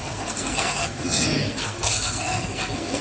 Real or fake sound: fake